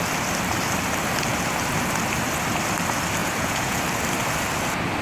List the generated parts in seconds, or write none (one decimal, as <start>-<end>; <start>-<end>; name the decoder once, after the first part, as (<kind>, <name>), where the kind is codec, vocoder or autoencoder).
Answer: 3.2-3.8 (vocoder, Vocos)

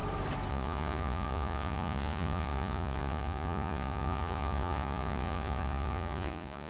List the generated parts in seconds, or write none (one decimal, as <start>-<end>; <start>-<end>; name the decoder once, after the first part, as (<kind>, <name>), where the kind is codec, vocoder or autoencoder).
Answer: 0.5-6.7 (vocoder, Vocos)